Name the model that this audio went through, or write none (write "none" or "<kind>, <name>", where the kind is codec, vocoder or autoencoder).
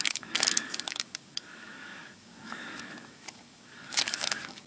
codec, DAC